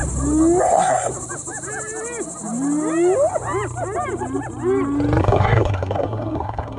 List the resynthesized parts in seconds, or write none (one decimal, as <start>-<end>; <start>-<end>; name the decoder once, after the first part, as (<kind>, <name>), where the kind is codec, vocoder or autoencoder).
0.6-1.1 (codec, SNAC); 5.2-6.8